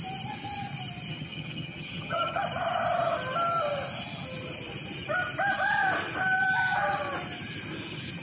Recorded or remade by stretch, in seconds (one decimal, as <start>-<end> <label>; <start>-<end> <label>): 0.0-1.1 recorded; 1.1-2.4 remade; 2.4-8.2 recorded